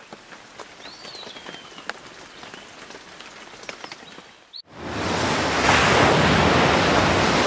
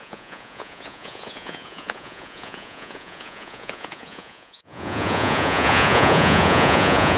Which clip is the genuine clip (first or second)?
first